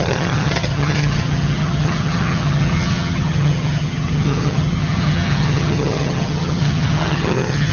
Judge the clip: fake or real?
fake